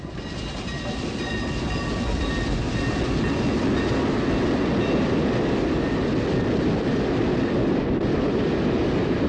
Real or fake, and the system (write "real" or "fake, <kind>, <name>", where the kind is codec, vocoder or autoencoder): real